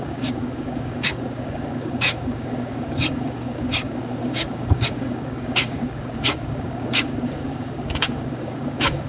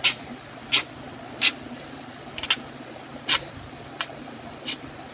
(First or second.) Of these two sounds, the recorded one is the second